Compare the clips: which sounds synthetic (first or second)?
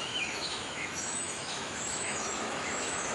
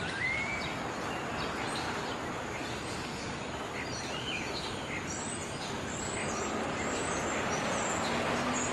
first